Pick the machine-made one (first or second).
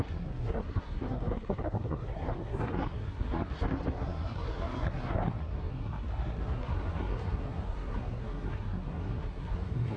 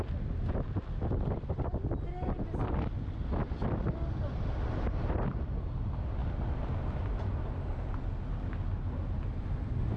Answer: first